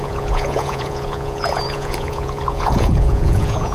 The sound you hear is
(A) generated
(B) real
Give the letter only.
A